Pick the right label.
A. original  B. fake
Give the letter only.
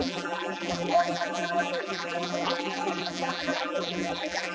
B